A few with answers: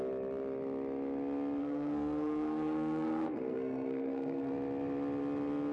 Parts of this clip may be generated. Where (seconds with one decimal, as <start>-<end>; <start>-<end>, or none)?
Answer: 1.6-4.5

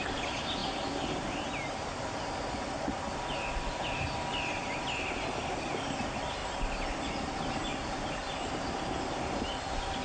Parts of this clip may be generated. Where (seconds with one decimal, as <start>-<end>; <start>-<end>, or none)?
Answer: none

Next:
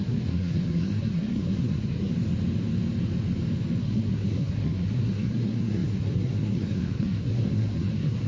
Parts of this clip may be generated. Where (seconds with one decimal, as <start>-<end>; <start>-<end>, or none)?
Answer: 0.0-2.1; 3.8-8.3

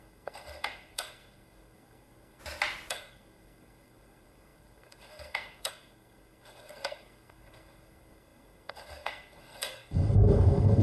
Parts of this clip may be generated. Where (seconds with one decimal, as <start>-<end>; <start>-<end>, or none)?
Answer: 0.0-2.4; 2.9-10.8

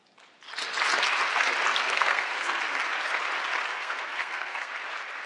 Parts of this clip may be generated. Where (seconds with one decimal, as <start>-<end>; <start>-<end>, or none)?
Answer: 1.7-2.6; 3.7-4.7

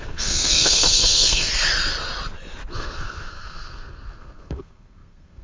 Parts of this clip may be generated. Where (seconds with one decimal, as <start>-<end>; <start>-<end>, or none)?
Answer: 0.0-1.5; 2.7-5.4

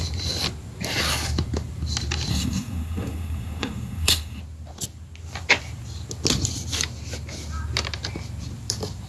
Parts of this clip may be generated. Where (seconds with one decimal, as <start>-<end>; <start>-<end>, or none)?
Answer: 2.3-4.4

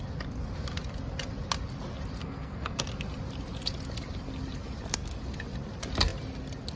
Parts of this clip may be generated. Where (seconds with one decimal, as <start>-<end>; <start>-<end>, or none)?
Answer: 2.2-2.8